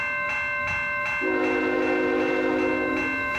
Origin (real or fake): real